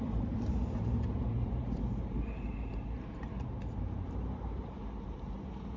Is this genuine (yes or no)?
no